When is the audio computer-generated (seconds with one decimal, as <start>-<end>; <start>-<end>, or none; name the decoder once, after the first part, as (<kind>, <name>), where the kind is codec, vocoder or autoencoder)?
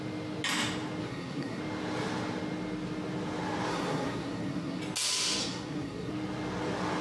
1.0-1.6 (codec, SNAC); 3.7-4.8; 5.4-6.1